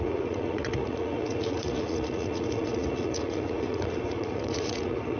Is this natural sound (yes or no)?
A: no